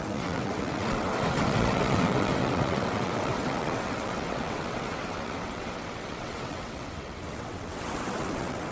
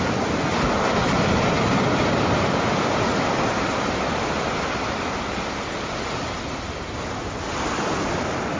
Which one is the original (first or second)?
second